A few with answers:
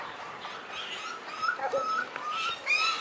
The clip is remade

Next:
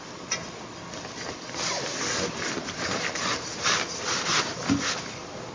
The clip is remade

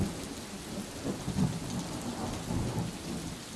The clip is recorded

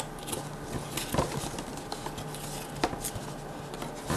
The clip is recorded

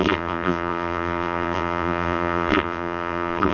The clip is remade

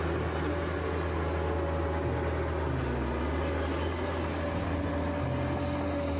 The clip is recorded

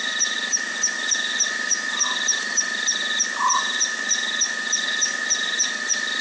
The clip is remade